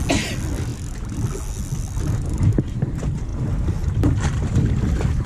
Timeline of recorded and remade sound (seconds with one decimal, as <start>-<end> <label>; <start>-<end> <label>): 0.0-5.3 recorded